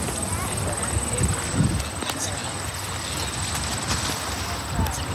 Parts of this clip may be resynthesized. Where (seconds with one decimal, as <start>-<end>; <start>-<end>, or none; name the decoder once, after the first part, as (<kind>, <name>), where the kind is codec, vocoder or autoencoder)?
none